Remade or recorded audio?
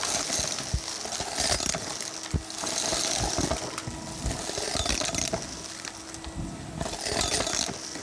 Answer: recorded